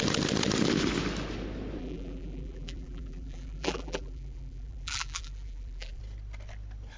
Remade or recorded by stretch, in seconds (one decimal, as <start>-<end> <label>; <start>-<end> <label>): 0.0-1.8 recorded; 1.8-6.0 remade; 6.0-7.0 recorded